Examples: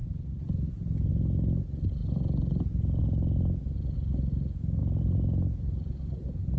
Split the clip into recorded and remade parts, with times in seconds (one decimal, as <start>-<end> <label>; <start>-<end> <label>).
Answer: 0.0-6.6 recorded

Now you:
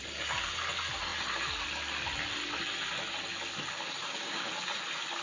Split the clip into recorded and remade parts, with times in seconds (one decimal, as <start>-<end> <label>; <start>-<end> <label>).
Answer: 0.0-4.0 recorded; 4.0-4.5 remade; 4.5-5.2 recorded

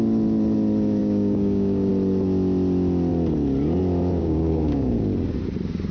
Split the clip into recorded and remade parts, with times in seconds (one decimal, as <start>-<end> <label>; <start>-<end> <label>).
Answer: 0.0-1.0 recorded; 1.0-1.9 remade; 1.9-4.2 recorded; 4.2-4.9 remade; 4.9-5.9 recorded

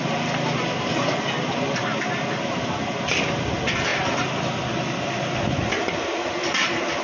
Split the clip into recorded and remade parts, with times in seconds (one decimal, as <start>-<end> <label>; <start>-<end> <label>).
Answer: 0.0-7.0 recorded